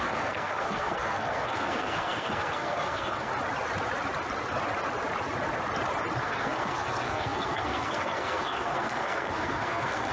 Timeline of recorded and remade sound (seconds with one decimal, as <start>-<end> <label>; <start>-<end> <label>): 0.0-3.3 remade; 3.3-6.2 recorded; 6.2-10.1 remade